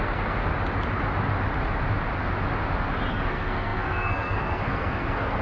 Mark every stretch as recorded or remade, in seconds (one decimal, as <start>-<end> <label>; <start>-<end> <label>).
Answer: 0.0-0.5 remade; 0.5-3.1 recorded; 3.1-5.4 remade